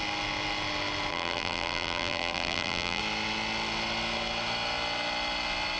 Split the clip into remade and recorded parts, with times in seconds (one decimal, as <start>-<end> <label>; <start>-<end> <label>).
0.0-1.1 recorded; 1.1-3.0 remade; 3.0-5.8 recorded